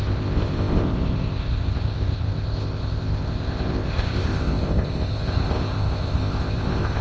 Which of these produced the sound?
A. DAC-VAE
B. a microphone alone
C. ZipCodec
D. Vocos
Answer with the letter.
C